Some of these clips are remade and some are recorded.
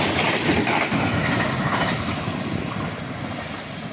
recorded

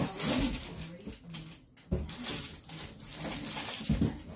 recorded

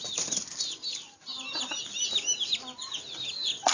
recorded